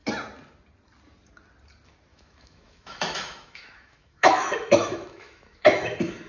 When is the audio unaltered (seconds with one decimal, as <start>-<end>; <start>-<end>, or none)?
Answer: 0.0-2.1